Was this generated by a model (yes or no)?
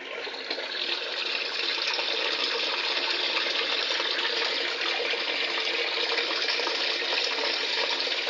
no